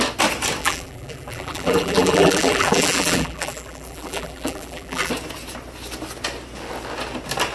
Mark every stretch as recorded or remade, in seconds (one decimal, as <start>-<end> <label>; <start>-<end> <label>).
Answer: 0.0-0.6 recorded; 0.6-5.1 remade; 5.1-7.5 recorded